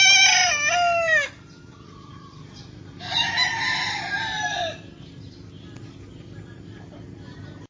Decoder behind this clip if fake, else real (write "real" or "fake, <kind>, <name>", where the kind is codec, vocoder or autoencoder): real